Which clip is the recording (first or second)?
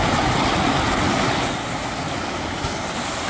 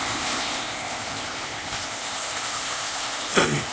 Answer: first